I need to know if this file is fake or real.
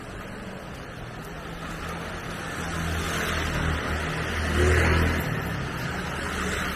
real